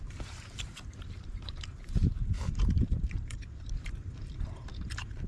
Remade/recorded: remade